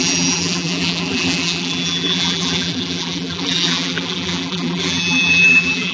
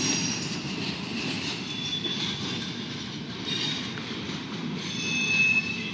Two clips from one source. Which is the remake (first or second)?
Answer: first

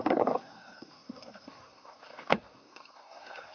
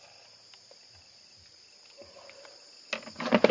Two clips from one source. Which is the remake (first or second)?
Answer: first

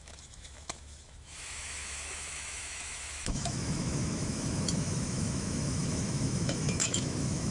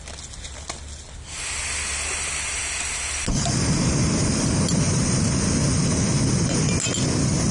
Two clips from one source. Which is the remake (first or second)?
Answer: first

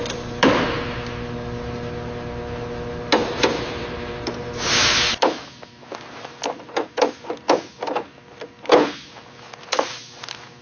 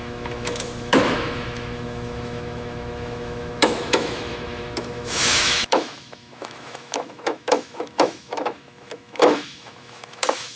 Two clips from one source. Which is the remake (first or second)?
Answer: second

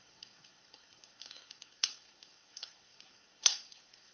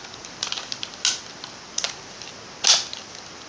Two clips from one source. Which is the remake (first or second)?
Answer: first